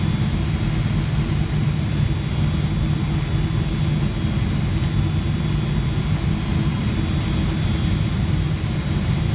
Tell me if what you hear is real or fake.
real